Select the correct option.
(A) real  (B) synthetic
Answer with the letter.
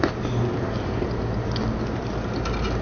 A